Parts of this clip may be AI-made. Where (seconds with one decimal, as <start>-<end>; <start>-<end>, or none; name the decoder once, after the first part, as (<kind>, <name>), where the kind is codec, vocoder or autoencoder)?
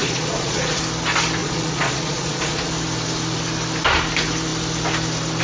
0.0-0.8 (vocoder, Vocos); 1.4-2.7